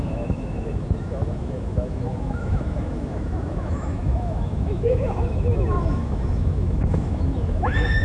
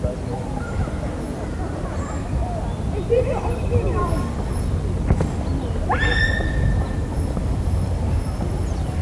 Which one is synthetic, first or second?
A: first